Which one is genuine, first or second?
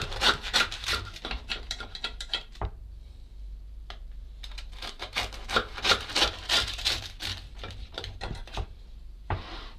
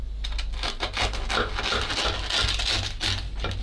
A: second